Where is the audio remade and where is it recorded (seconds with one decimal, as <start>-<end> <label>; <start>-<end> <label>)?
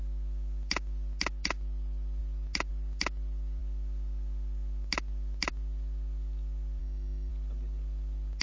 0.0-6.8 recorded; 6.8-7.3 remade; 7.3-8.4 recorded